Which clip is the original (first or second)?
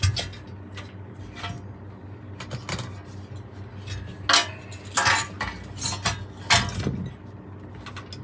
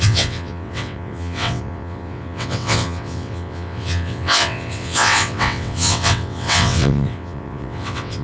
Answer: first